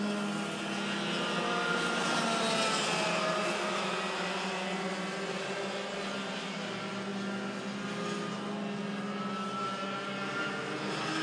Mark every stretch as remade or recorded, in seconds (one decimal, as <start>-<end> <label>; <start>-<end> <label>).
0.0-11.2 recorded